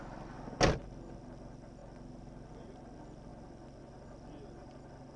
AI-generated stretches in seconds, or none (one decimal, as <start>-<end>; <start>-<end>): none